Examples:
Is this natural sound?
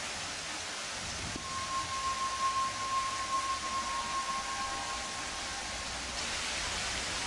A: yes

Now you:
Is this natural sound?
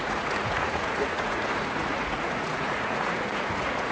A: no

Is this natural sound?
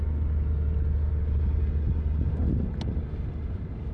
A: yes